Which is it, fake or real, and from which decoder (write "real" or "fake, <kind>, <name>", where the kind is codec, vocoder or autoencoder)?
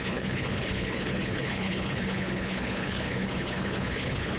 fake, codec, HILCodec